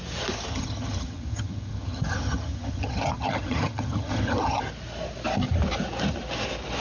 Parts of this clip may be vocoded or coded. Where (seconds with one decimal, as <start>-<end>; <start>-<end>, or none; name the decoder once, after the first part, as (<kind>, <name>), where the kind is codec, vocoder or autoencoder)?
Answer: 0.5-4.6 (vocoder, HiFi-GAN)